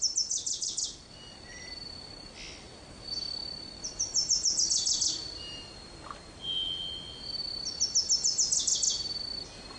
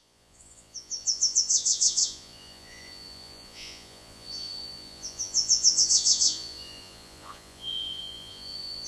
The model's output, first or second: second